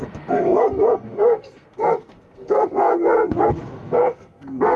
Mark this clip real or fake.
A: fake